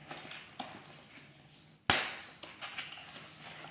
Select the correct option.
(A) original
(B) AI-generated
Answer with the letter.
A